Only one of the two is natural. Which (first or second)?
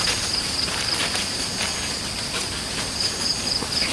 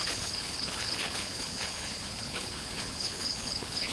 first